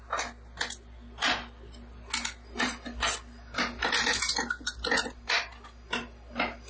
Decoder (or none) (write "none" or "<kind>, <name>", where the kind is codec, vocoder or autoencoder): none